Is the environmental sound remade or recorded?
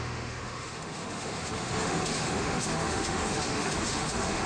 remade